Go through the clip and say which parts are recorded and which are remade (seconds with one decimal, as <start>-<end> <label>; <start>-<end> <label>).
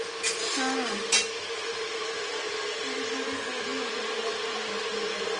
0.0-5.4 recorded